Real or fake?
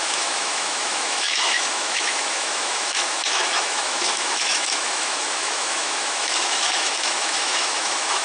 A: fake